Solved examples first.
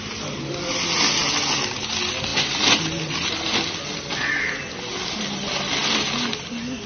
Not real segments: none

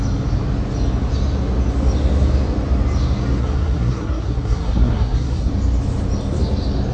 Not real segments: 3.4-5.5 (codec, SNAC)

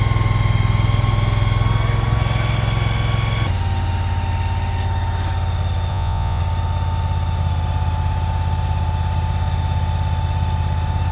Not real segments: 5.9-6.4 (vocoder, Vocos)

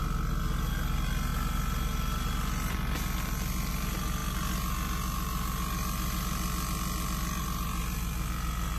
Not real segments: none